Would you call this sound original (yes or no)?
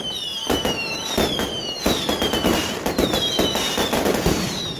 yes